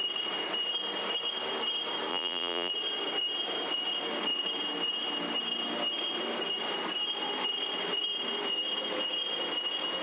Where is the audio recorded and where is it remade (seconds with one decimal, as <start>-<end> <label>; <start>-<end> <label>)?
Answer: 0.0-2.1 recorded; 2.1-2.7 remade; 2.7-10.0 recorded